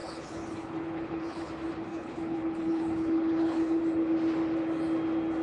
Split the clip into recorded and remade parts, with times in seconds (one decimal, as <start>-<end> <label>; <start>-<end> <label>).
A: 0.0-1.5 remade; 1.5-1.9 recorded; 1.9-3.8 remade; 3.8-5.4 recorded